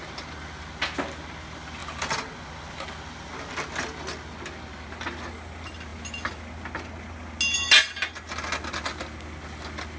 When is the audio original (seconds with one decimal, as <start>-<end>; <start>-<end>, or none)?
0.0-10.0